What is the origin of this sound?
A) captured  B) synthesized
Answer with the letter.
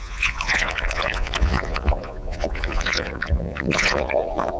B